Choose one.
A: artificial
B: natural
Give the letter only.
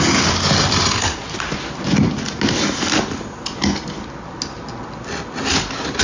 B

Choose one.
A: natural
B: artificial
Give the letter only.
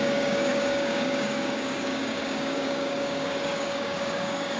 B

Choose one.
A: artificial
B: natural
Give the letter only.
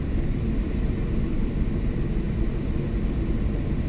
B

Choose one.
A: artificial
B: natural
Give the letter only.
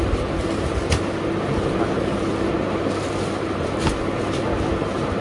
B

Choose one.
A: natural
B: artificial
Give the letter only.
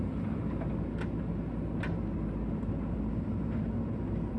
A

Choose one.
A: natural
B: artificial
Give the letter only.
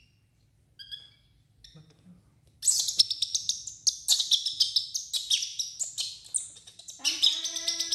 A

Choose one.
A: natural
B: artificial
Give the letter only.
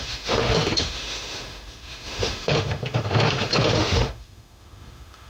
B